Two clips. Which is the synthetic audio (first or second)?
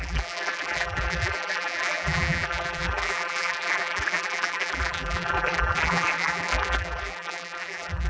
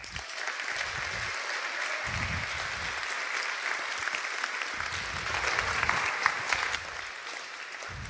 first